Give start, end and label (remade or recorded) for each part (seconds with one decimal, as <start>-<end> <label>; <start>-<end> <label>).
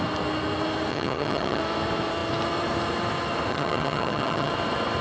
0.0-0.9 recorded; 0.9-1.6 remade; 1.6-3.5 recorded; 3.5-4.5 remade; 4.5-5.0 recorded